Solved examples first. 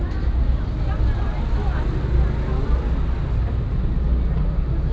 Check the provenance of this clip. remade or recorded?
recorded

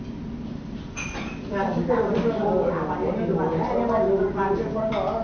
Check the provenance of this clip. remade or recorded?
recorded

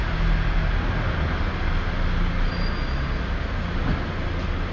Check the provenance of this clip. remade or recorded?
recorded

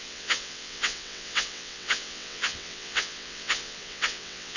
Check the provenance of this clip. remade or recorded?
remade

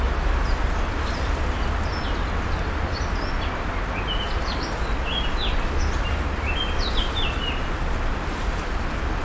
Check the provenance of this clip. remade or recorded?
recorded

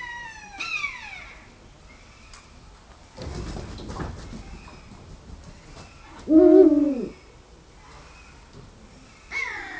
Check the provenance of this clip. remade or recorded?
recorded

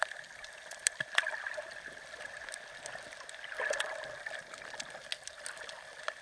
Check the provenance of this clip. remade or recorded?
recorded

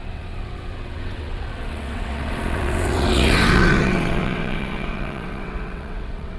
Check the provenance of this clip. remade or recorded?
remade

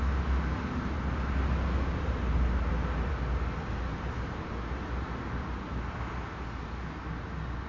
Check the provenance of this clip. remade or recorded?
recorded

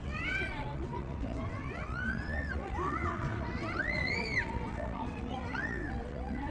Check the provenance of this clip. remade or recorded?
remade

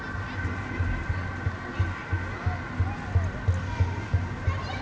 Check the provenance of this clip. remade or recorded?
recorded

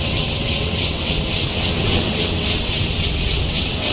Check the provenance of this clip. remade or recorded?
remade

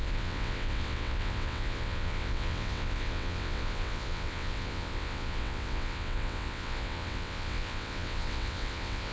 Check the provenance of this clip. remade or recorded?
remade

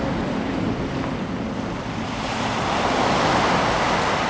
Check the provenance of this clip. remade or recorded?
recorded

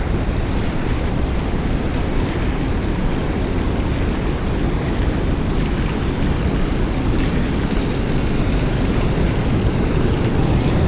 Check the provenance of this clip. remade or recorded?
recorded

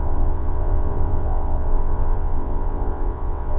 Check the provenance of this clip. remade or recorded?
remade